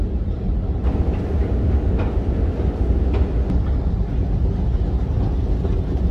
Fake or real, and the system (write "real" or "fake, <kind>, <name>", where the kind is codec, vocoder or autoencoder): real